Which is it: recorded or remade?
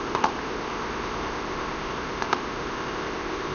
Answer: remade